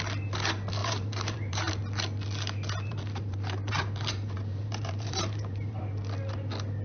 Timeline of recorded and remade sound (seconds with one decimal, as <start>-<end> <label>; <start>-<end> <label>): 0.0-0.8 recorded; 0.8-1.7 remade; 1.7-2.9 recorded; 2.9-5.8 remade; 5.8-6.8 recorded